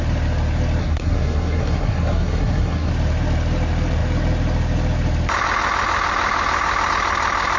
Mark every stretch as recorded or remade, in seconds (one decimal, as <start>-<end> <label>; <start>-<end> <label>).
0.0-0.8 recorded; 0.8-2.9 remade; 2.9-7.6 recorded